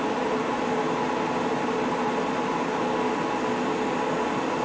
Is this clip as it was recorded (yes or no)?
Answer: yes